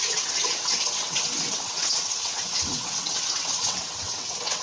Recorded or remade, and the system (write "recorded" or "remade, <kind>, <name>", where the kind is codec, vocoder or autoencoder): remade, vocoder, WaveNeXt